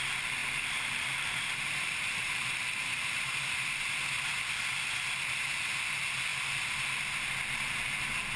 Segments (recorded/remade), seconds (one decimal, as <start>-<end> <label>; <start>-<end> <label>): 0.0-0.4 recorded; 0.4-3.4 remade; 3.4-8.4 recorded